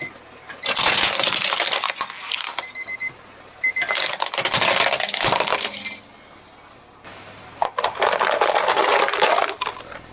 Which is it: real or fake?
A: real